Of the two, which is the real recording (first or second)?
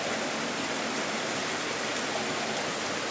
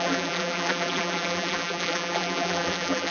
first